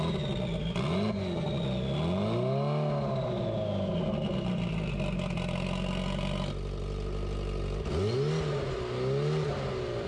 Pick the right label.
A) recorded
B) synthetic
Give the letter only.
A